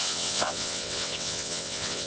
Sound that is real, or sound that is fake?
fake